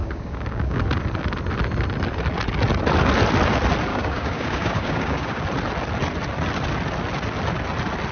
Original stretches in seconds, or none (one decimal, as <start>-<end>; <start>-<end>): 0.8-3.9; 5.4-8.1